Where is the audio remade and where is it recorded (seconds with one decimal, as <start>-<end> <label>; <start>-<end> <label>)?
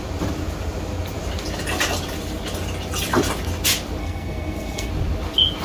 0.0-4.0 recorded; 4.0-4.9 remade; 4.9-5.6 recorded